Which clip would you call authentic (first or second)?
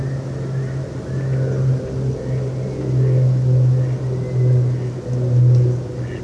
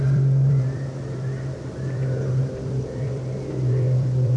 first